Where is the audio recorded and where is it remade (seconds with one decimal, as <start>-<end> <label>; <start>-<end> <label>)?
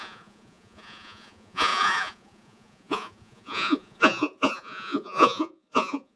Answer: 0.0-6.2 remade